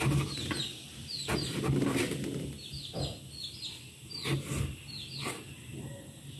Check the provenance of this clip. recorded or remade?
recorded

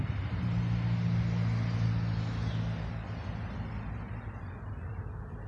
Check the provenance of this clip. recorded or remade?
recorded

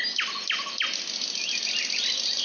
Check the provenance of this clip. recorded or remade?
recorded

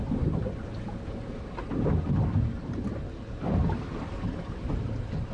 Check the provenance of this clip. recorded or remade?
recorded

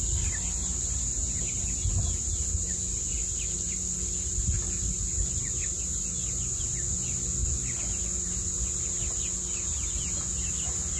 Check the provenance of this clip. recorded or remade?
recorded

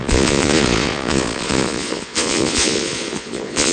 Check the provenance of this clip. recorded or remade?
remade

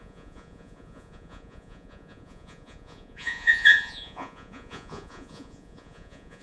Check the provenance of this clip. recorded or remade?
remade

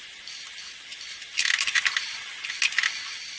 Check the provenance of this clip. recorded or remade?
recorded